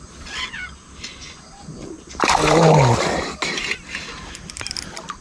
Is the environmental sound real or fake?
real